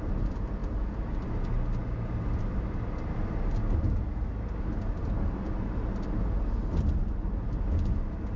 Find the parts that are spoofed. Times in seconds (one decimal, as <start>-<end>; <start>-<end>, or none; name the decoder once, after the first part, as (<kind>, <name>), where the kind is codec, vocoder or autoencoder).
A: none